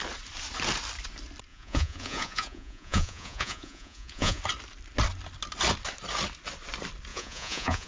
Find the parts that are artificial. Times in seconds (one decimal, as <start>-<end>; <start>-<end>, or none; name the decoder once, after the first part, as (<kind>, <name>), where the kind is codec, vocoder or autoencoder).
1.5-4.4 (vocoder, Vocos); 7.1-7.9